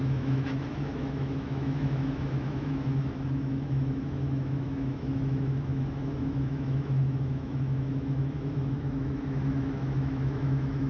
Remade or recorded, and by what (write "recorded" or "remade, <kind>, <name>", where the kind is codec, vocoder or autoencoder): remade, autoencoder, DAC-VAE